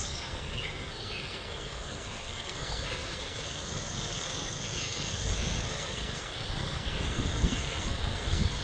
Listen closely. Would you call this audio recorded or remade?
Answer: remade